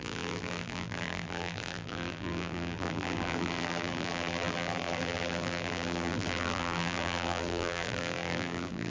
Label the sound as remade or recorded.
remade